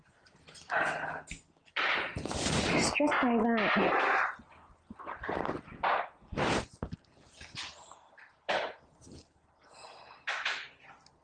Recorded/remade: recorded